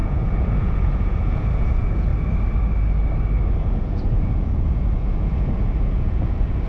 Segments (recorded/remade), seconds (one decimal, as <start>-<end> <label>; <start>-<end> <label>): 0.0-2.1 remade; 2.1-3.6 recorded; 3.6-6.7 remade